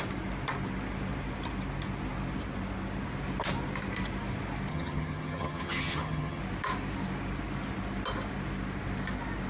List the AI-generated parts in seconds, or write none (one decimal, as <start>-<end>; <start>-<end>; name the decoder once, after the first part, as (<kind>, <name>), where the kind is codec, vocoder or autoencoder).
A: 4.7-6.4 (vocoder, HiFi-GAN)